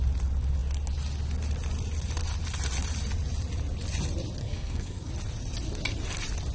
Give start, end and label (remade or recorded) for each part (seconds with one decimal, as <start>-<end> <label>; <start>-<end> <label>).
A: 0.0-4.4 recorded; 4.4-5.1 remade; 5.1-6.5 recorded